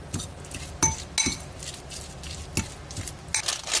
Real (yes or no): yes